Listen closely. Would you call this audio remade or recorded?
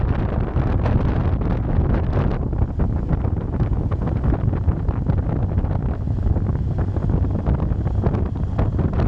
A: recorded